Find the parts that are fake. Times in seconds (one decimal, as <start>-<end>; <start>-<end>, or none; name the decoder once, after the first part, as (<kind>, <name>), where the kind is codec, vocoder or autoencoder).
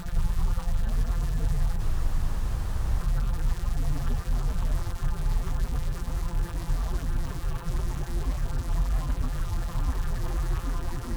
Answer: 0.0-1.8 (vocoder, BigVGAN v2); 3.0-11.2